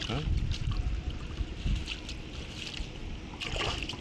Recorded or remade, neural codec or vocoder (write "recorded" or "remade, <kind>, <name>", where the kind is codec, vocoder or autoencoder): recorded